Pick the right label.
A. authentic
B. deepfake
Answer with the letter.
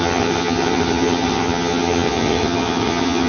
B